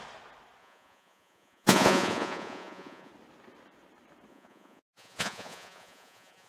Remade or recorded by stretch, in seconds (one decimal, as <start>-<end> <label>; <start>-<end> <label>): 0.0-0.6 recorded; 0.6-3.1 remade; 3.1-4.3 recorded; 4.3-6.5 remade